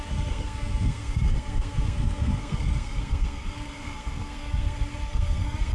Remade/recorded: remade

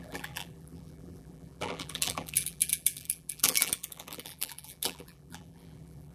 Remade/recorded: remade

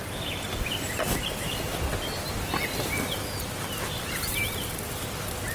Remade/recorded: recorded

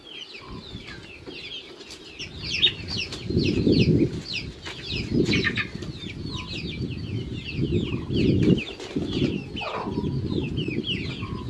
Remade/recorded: recorded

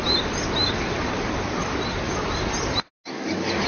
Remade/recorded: recorded